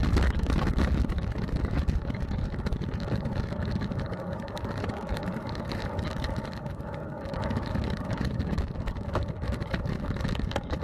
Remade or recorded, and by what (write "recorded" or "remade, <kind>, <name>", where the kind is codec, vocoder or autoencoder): remade, codec, DAC